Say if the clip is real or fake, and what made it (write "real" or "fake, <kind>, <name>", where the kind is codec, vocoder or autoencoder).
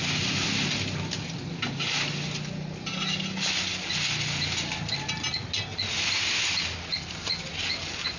real